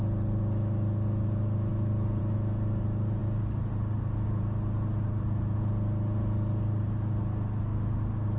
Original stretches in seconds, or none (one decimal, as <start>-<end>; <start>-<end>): 0.0-8.4